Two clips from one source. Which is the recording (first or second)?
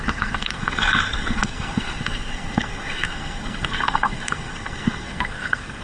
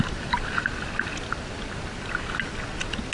second